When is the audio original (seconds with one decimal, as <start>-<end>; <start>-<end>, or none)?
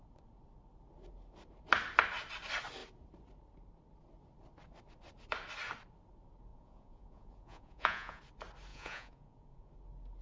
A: 0.0-6.5; 8.2-8.7; 9.7-10.2